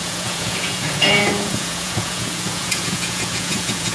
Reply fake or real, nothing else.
fake